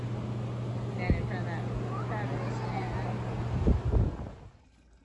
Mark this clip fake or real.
real